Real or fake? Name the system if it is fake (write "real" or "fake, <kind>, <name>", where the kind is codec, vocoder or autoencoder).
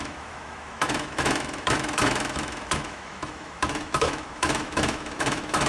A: fake, autoencoder, DAC-VAE